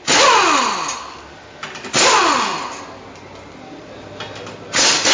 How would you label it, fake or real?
real